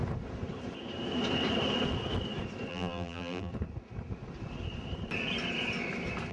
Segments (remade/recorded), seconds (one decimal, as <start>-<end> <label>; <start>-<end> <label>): 0.0-2.7 recorded; 2.7-3.5 remade; 3.5-6.3 recorded